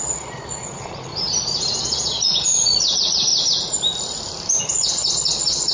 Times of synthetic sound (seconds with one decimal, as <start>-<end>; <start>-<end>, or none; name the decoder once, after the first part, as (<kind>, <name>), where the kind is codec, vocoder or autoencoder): 0.0-1.1 (vocoder, Vocos); 1.8-3.3; 4.6-5.7

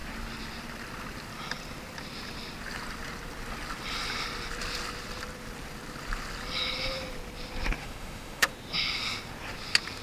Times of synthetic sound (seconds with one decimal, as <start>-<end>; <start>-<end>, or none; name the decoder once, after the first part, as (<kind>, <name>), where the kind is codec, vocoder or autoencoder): 7.8-8.5 (autoencoder, DAC-VAE)

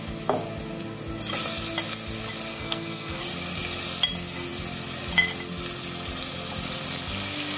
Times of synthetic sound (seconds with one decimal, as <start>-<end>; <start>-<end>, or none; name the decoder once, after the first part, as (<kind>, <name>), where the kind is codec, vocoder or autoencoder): 2.5-3.2 (codec, SNAC)

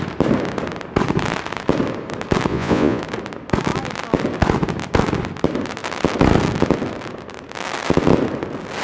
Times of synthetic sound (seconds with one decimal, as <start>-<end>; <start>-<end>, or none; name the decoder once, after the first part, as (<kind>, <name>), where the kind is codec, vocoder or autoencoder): 2.5-3.0 (vocoder, Vocos)

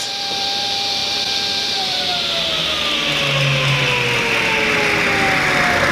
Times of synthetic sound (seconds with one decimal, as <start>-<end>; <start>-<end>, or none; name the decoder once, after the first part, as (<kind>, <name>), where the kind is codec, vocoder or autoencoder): 0.0-2.1 (vocoder, BigVGAN v2)

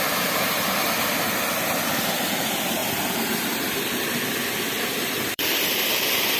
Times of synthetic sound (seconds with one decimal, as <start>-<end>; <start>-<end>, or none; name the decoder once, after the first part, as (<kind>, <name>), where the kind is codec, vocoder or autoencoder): 2.8-6.4 (vocoder, BigVGAN v2)

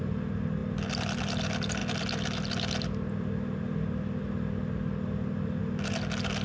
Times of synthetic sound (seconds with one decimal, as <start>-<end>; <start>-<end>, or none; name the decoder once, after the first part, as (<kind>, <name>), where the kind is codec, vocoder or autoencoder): none